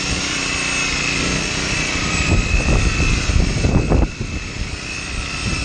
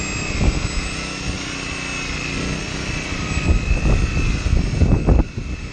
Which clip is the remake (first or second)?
first